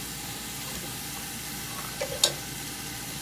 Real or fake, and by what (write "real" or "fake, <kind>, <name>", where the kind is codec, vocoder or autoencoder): real